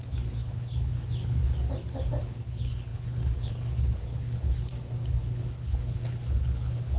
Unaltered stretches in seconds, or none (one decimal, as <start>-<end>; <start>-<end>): 1.4-2.2; 4.7-5.2